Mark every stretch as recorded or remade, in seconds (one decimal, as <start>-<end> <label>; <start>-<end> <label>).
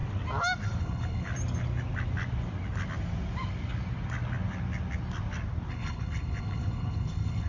0.0-0.8 recorded; 0.8-1.3 remade; 1.3-5.7 recorded; 5.7-7.5 remade